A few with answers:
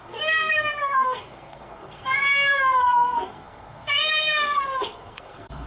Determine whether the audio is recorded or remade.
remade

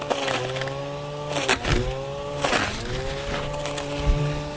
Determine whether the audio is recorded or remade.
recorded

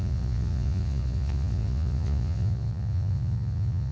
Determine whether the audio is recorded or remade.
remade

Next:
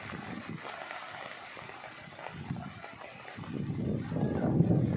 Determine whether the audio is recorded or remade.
recorded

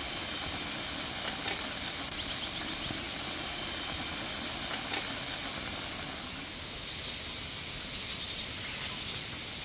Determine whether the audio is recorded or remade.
recorded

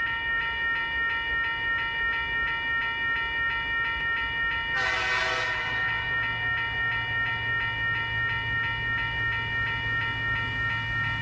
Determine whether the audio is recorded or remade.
recorded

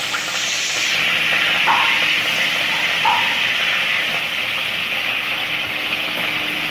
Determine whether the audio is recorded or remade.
recorded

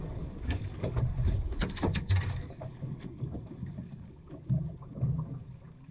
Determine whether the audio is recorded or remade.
remade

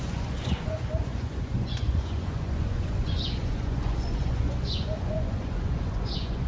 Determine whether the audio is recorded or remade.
remade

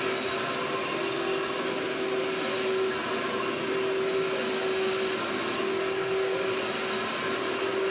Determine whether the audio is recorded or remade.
recorded